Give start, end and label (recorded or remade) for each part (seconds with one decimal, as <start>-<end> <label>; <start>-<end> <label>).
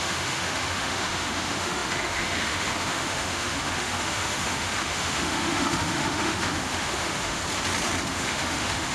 0.0-7.4 remade; 7.4-8.1 recorded; 8.1-8.9 remade